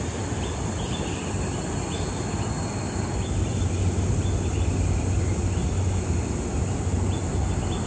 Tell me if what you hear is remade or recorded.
recorded